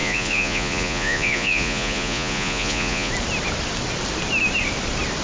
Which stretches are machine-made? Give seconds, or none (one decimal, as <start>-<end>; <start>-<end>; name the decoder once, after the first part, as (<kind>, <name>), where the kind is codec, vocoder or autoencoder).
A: 0.0-3.1 (vocoder, Vocos)

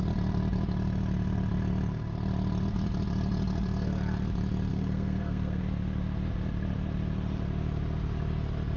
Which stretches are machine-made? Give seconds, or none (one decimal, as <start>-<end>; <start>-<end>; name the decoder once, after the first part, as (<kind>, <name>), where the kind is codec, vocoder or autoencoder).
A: 4.7-5.6 (codec, SNAC)

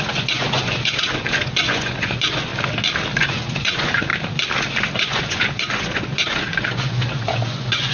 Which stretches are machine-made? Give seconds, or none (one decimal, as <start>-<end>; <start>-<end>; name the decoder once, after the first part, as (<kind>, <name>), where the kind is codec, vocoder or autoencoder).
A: 0.0-2.5 (vocoder, Vocos); 3.2-4.1; 4.9-7.9

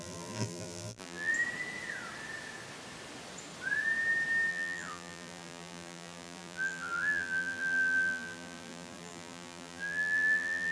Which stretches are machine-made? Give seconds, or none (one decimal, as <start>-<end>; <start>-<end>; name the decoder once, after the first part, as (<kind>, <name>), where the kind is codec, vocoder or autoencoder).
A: 0.0-1.3 (vocoder, BigVGAN v2); 4.5-10.7

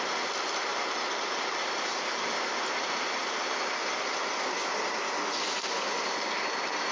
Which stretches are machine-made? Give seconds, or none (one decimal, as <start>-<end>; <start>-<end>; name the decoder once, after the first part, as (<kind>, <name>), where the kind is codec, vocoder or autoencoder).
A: 0.7-2.3 (vocoder, BigVGAN v2)

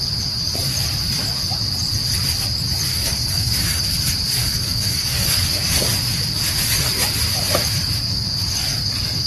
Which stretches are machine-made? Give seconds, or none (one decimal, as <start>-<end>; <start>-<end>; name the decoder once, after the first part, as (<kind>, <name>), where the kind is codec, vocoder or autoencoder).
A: 2.9-3.8 (codec, DAC); 4.4-5.9

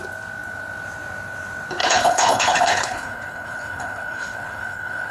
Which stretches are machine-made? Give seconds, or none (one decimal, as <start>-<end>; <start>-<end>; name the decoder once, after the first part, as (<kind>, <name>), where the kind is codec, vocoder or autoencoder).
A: 1.8-5.1 (codec, HILCodec)

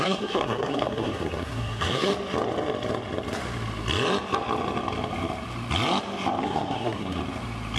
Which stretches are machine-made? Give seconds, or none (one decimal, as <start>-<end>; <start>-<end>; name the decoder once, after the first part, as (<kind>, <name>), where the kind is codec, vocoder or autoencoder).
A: 0.0-2.1 (codec, SNAC); 6.4-7.2